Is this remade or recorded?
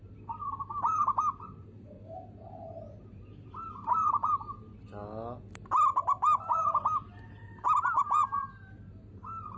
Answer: recorded